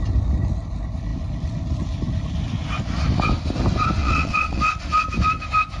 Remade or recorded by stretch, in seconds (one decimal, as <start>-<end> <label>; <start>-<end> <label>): 0.0-4.0 recorded; 4.0-4.6 remade; 4.6-5.8 recorded